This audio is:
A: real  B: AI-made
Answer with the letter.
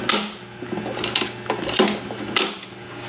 A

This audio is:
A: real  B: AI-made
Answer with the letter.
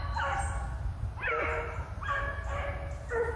A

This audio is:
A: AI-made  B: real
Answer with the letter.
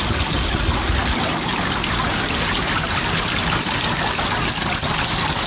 B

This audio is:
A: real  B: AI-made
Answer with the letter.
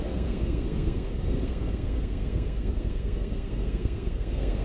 B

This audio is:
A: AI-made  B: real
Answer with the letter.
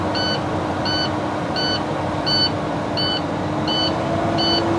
B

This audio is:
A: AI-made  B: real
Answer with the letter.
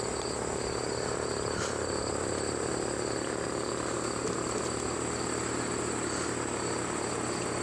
B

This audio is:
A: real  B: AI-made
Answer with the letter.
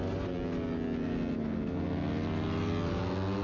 A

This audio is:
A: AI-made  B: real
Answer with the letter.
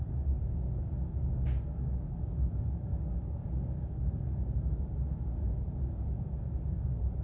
A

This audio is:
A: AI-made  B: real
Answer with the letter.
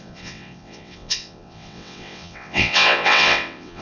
A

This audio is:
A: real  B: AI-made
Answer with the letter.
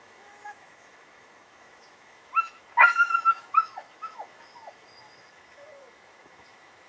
B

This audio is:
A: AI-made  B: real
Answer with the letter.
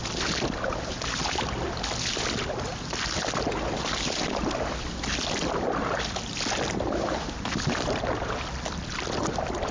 B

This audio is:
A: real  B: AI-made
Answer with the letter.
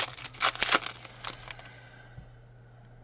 A